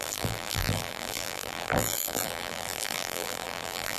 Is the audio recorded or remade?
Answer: remade